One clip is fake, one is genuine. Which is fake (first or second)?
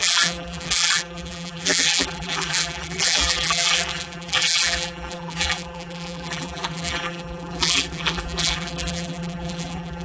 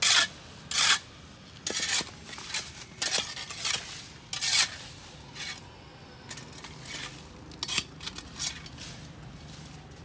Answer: first